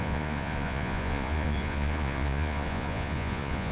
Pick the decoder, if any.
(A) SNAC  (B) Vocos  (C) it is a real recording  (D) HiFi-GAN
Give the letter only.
B